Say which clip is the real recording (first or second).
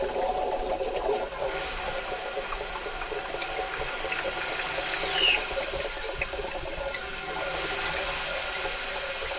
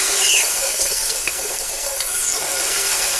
first